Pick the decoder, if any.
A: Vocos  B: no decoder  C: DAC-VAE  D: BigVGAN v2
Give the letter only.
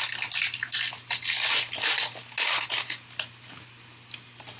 B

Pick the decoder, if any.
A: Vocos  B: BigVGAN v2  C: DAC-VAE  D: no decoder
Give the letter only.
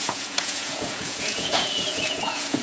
A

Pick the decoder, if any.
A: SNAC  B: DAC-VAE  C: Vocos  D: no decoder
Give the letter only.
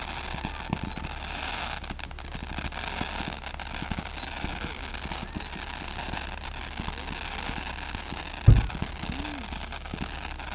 D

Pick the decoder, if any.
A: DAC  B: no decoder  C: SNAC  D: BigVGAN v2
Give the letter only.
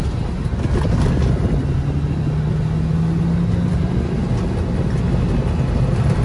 B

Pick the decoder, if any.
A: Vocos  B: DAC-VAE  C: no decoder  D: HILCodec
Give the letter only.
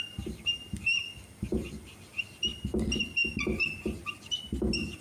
C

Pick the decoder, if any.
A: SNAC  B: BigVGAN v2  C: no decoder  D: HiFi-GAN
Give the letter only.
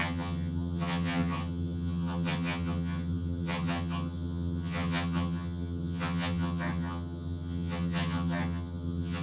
D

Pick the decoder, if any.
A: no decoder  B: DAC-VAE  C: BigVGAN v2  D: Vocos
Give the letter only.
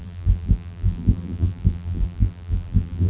C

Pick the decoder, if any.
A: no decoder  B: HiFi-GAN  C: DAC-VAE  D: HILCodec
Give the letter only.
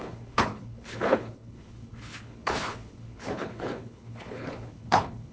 D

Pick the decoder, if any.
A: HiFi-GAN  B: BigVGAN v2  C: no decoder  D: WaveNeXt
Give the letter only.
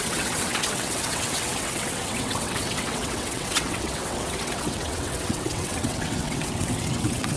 D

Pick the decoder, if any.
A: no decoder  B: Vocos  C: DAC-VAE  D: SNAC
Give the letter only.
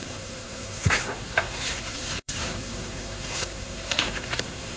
D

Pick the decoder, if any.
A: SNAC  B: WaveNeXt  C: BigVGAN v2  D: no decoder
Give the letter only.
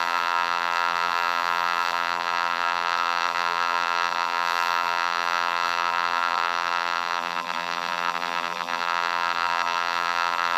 C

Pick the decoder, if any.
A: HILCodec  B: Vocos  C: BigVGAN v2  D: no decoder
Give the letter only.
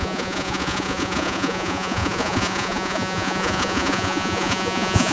B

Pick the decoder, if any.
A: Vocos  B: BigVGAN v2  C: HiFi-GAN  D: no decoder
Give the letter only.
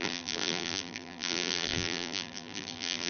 B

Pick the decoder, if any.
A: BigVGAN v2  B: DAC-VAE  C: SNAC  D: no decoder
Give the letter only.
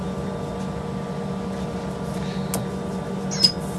D